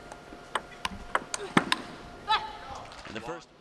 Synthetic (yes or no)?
no